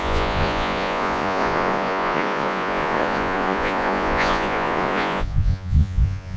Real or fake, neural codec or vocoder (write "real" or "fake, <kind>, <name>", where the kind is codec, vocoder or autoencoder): fake, vocoder, Vocos